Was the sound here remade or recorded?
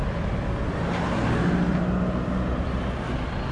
recorded